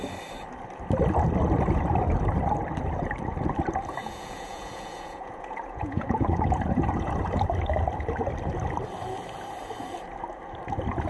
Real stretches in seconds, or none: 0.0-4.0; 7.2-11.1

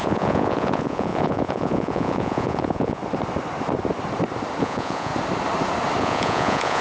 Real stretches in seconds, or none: 3.0-4.6; 5.1-6.0

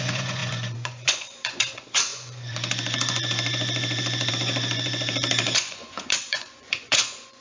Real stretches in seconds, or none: none

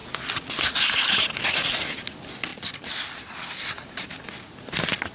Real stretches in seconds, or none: 0.0-5.1